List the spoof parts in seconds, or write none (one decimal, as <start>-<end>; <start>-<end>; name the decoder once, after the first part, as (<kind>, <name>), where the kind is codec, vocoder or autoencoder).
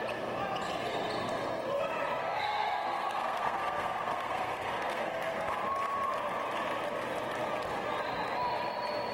2.2-5.5 (codec, SNAC)